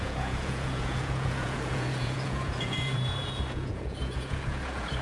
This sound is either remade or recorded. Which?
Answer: remade